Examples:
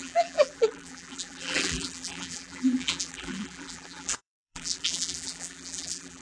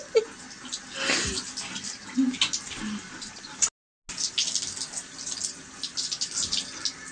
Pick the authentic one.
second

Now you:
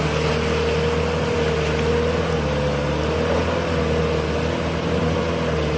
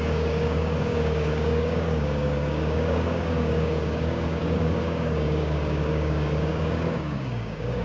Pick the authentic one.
first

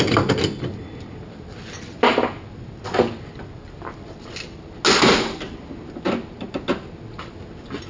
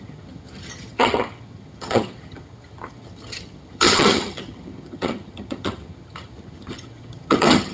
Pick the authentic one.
first